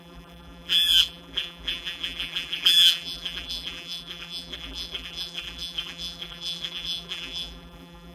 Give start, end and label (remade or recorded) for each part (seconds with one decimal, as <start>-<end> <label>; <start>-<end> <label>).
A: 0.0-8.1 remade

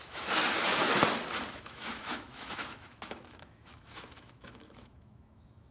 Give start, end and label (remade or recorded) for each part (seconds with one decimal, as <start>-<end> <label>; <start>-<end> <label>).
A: 0.0-0.4 remade; 0.4-1.5 recorded; 1.5-5.7 remade

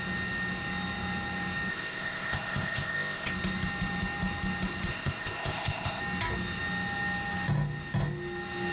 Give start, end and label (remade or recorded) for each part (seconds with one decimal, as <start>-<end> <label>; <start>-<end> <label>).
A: 0.0-1.7 recorded; 1.7-3.3 remade; 3.3-4.9 recorded; 4.9-6.0 remade; 6.0-8.7 recorded

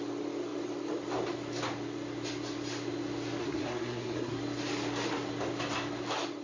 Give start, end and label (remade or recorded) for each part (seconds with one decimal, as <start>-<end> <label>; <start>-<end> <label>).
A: 0.0-3.4 recorded; 3.4-4.4 remade; 4.4-6.4 recorded

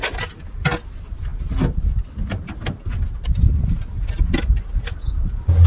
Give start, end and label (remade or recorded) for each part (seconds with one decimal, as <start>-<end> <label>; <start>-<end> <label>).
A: 0.0-5.7 recorded

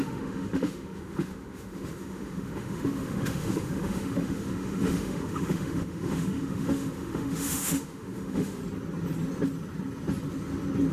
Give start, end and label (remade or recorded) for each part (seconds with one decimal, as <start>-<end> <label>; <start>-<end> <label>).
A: 0.0-8.6 remade; 8.6-10.9 recorded

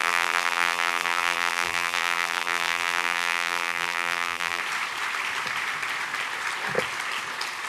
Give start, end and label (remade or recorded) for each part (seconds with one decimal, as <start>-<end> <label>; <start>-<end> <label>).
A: 0.0-4.6 remade; 4.6-7.7 recorded